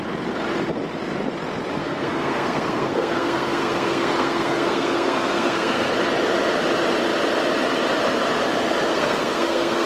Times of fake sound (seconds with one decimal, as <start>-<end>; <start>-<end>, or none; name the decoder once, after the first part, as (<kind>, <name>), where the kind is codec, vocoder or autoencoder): 1.8-5.9 (codec, SNAC); 8.9-9.9